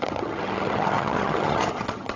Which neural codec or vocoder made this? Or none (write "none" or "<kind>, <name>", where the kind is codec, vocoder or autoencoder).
vocoder, HiFi-GAN